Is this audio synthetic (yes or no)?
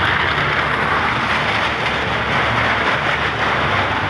no